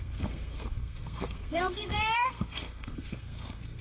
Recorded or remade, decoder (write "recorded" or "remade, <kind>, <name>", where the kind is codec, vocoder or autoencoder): remade, codec, SNAC